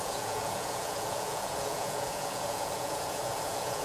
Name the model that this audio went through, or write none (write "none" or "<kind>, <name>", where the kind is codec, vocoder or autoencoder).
vocoder, Vocos